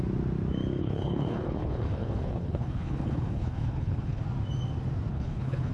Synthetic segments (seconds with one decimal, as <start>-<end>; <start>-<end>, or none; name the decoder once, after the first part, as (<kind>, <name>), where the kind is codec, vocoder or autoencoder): 0.8-4.2 (codec, HILCodec); 5.1-5.7